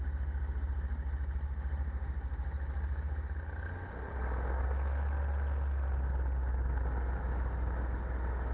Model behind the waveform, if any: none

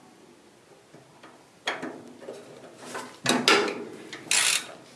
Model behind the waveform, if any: none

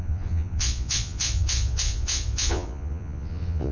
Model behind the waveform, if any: vocoder, Vocos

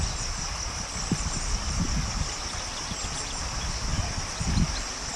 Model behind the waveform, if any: none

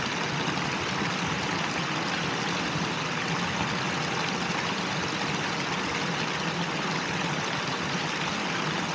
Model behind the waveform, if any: none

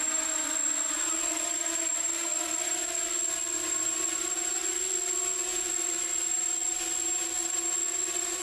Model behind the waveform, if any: none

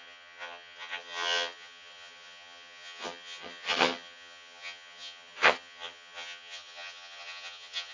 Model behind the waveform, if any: vocoder, HiFi-GAN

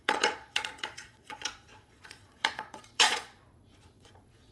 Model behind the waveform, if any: vocoder, Vocos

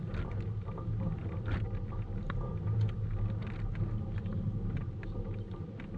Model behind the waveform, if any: none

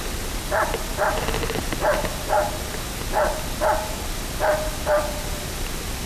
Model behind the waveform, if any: none